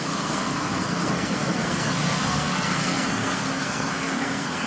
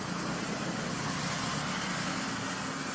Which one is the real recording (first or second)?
second